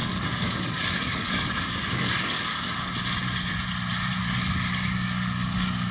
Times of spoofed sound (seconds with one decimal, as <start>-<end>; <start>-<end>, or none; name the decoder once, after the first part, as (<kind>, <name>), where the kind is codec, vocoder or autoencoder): 0.0-2.9 (codec, DAC); 4.2-5.9